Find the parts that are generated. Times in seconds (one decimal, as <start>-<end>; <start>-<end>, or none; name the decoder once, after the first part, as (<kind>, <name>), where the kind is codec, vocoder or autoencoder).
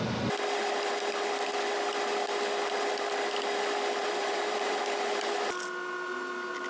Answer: 4.0-4.8 (vocoder, BigVGAN v2)